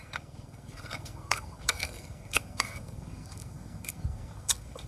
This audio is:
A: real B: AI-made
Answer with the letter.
B